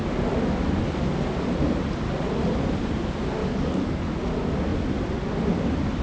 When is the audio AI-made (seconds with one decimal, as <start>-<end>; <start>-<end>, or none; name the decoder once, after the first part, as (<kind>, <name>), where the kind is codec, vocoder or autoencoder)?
3.4-4.2 (codec, DAC)